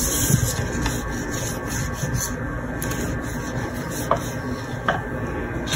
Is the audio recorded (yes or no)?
yes